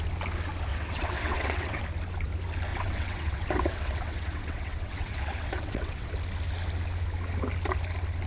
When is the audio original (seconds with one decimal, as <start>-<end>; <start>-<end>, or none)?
0.0-0.7; 1.8-2.7; 6.1-8.3